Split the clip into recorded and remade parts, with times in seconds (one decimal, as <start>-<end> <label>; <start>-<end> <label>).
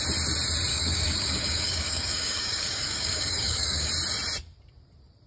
0.0-0.7 recorded; 0.7-3.9 remade; 3.9-5.3 recorded